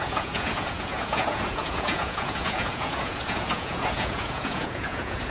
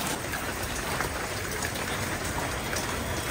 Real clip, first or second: second